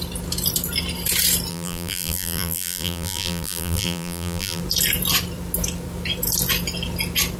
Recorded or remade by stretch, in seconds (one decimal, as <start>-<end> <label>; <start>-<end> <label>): 0.0-1.5 recorded; 1.5-4.6 remade; 4.6-7.4 recorded